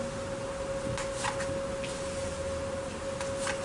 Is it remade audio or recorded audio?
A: recorded